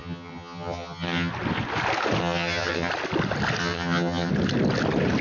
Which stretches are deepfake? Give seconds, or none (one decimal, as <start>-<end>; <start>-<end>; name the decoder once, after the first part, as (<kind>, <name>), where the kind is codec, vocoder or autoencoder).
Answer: 0.0-1.3 (vocoder, HiFi-GAN); 2.2-2.9; 3.6-4.3